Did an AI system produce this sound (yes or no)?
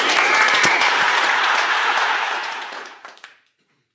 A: yes